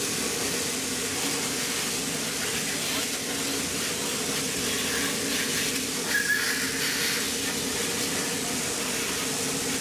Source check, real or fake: real